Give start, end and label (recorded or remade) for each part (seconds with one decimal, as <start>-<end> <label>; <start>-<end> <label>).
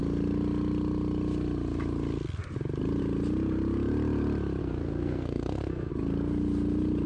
0.0-4.6 recorded; 4.6-5.9 remade; 5.9-7.1 recorded